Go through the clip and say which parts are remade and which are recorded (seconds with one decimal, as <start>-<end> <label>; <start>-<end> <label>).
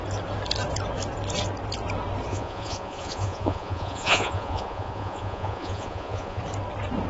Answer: 0.0-2.3 recorded; 2.3-6.4 remade; 6.4-7.1 recorded